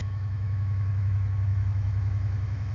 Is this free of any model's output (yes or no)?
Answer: no